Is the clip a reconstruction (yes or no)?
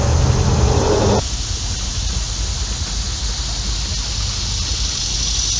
no